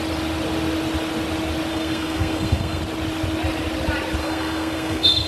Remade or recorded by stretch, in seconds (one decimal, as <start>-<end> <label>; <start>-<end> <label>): 0.0-1.7 recorded; 1.7-2.8 remade; 2.8-4.2 recorded; 4.2-5.3 remade